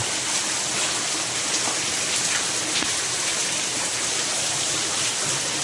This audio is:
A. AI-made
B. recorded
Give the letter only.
B